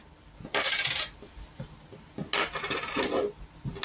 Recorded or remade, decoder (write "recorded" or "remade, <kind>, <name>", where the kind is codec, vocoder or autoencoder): recorded